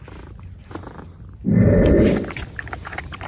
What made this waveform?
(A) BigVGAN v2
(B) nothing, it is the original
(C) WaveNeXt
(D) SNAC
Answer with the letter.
B